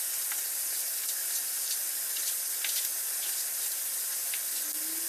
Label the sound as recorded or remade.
recorded